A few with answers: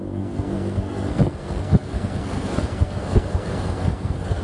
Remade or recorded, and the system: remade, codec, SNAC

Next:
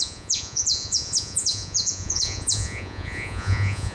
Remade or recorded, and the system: remade, vocoder, Vocos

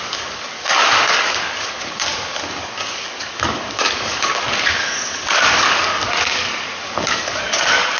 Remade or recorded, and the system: remade, codec, DAC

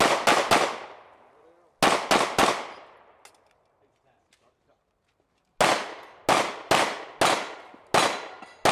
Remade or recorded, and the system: recorded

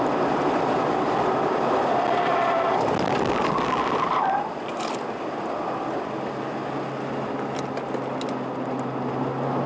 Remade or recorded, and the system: recorded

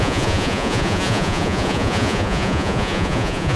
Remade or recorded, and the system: remade, vocoder, Vocos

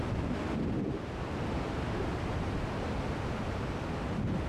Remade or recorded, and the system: recorded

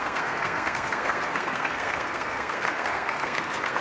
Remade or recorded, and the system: remade, codec, SNAC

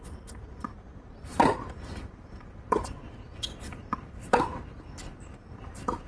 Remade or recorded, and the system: remade, vocoder, BigVGAN v2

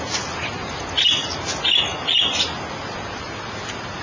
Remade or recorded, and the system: recorded